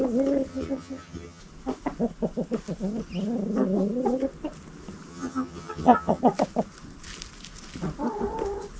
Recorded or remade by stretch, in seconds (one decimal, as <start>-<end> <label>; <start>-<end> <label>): 0.0-0.5 recorded; 0.5-1.4 remade; 1.4-5.1 recorded; 5.1-6.2 remade; 6.2-8.8 recorded